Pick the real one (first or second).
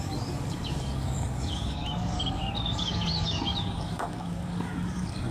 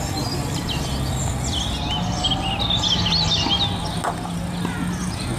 second